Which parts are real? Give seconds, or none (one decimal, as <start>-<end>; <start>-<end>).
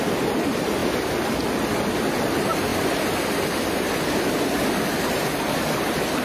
0.0-2.7